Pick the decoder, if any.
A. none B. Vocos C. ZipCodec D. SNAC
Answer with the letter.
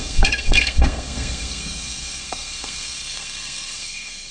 D